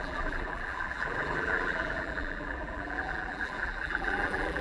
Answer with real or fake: fake